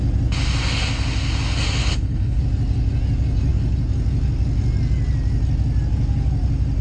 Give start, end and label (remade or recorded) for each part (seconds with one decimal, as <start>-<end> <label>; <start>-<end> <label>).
0.0-1.8 recorded; 1.8-2.4 remade; 2.4-6.8 recorded